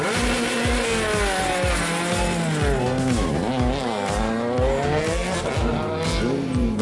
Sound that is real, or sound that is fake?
real